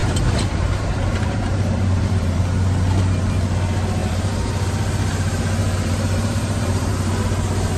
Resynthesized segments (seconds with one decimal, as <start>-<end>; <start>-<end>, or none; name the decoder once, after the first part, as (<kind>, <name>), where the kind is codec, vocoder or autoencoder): 0.0-2.4 (vocoder, BigVGAN v2); 4.0-4.5; 5.6-6.9